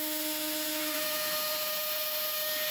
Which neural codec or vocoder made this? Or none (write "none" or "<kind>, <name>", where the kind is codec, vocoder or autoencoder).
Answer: autoencoder, DAC-VAE